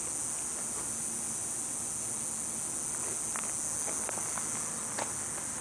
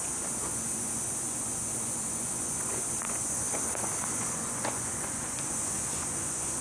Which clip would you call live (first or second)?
first